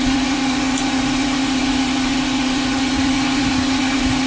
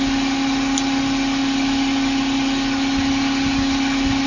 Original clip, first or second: second